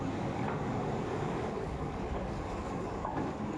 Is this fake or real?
fake